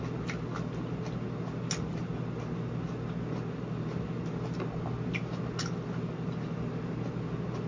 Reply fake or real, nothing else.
real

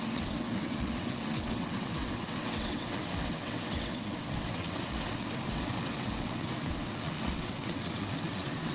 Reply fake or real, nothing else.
fake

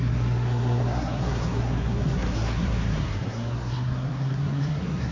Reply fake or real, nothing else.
fake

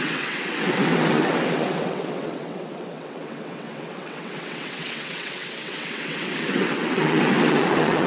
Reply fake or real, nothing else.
fake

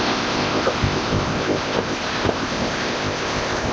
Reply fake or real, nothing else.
fake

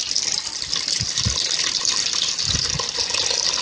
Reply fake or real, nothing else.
real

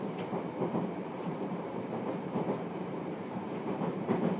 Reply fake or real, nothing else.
fake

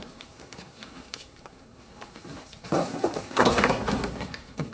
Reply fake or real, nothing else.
fake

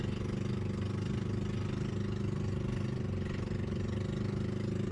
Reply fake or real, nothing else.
real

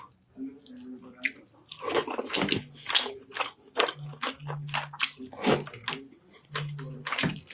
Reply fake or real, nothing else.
real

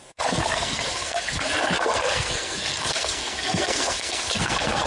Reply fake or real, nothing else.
fake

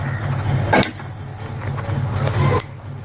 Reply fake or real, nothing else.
real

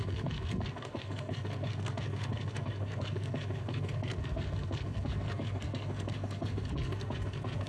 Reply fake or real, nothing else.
fake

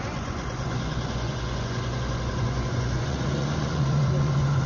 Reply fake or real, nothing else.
fake